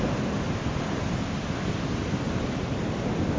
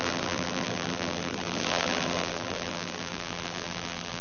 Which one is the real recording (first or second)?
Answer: first